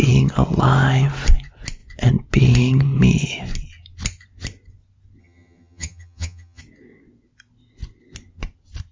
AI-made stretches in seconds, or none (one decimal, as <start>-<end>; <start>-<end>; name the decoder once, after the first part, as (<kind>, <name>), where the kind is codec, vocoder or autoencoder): 5.2-6.6 (vocoder, HiFi-GAN)

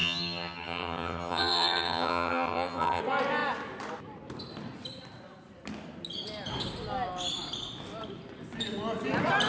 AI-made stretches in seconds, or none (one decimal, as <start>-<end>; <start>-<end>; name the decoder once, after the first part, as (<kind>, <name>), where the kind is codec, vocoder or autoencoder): 0.0-3.0 (vocoder, HiFi-GAN)

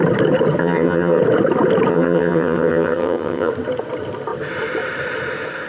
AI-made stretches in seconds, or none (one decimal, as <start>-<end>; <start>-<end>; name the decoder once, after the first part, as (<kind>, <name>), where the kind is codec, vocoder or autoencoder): 0.6-1.2 (vocoder, HiFi-GAN); 1.9-3.5